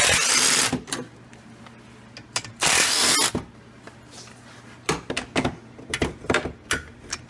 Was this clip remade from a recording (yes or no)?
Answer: no